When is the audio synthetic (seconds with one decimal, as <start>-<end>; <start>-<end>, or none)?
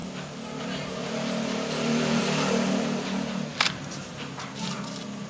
1.0-2.2